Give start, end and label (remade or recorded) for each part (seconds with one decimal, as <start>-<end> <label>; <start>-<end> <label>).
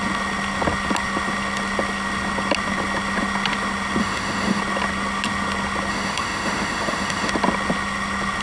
0.0-4.0 recorded; 4.0-4.6 remade; 4.6-5.9 recorded; 5.9-7.3 remade; 7.3-8.4 recorded